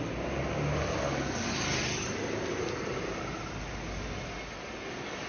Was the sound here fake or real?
real